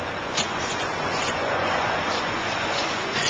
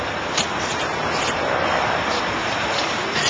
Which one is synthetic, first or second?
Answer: first